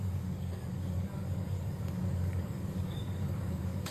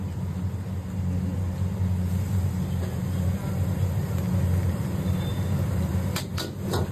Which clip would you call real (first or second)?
second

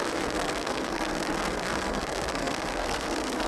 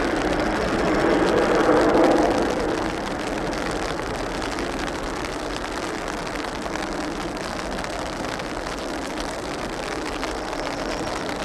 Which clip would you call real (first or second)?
second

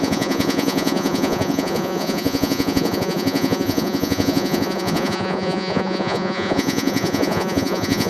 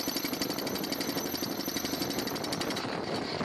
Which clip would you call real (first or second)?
second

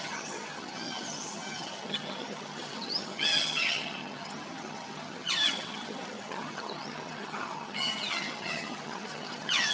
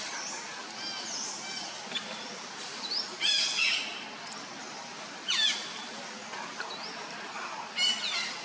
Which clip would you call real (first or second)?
second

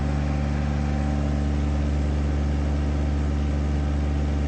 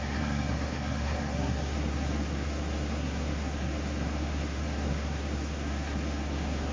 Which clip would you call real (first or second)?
first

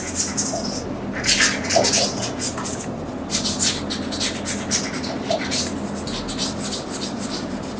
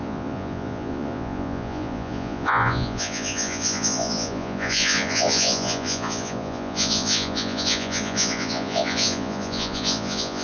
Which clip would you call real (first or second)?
first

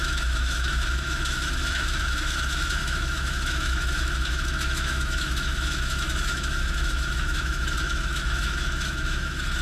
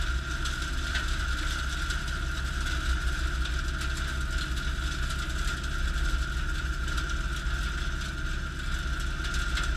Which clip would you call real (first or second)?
second